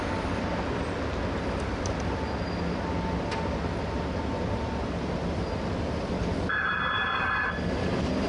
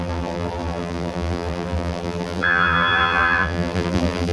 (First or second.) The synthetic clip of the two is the second